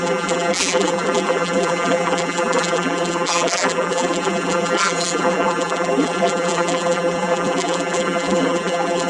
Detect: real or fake fake